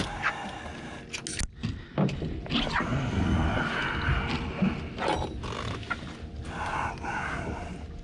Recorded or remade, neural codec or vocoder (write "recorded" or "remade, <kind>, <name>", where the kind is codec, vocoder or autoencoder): recorded